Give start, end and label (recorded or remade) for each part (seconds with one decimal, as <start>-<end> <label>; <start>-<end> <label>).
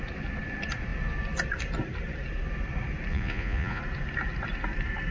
0.0-3.1 recorded; 3.1-3.8 remade; 3.8-5.1 recorded